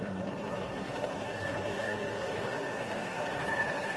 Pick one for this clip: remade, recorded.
remade